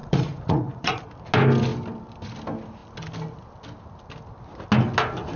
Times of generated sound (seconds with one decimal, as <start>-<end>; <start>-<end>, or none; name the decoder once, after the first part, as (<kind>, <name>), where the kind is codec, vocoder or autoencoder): 0.0-1.0 (vocoder, Vocos)